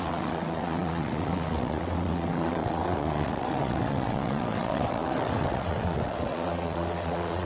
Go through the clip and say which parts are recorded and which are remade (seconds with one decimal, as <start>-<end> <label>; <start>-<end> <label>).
0.0-7.5 remade